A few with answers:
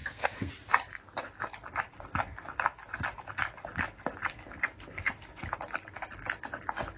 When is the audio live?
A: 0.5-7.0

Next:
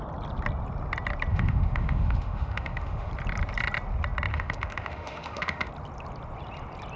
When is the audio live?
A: 0.0-1.3; 3.1-4.3; 5.7-7.0

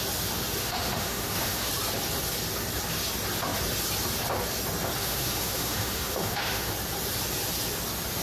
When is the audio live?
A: 0.0-0.6; 1.7-5.0; 6.7-8.2

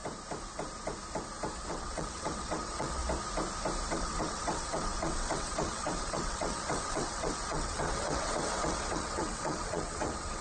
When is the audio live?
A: 0.0-1.7; 3.0-3.9

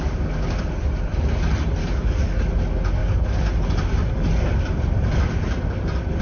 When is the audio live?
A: 0.6-1.8; 2.4-3.0; 3.5-6.2

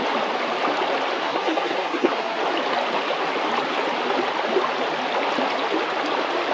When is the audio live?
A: 0.0-1.2; 2.4-6.5

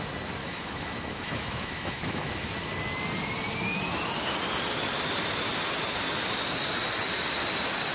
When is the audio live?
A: 0.0-0.4; 2.3-7.9